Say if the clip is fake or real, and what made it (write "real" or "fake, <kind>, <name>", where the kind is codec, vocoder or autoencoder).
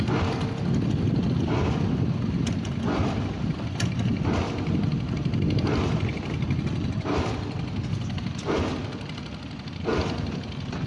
real